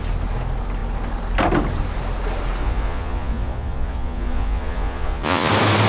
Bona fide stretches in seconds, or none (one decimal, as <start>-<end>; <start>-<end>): 0.0-2.6; 5.5-5.9